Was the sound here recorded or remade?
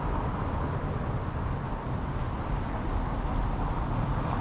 recorded